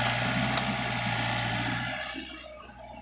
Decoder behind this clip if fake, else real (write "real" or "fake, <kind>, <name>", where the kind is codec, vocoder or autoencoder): real